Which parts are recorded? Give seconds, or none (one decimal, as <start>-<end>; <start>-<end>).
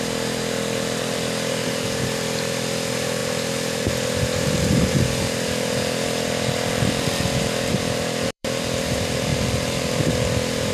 none